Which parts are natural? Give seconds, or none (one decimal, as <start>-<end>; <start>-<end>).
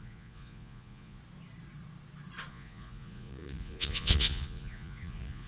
1.2-2.5